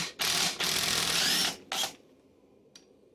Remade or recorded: recorded